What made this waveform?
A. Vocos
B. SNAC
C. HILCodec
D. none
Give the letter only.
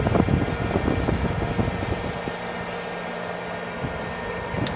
D